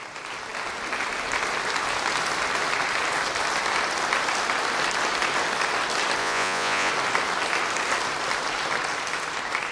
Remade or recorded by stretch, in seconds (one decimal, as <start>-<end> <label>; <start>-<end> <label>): 0.0-6.2 recorded; 6.2-6.9 remade; 6.9-9.7 recorded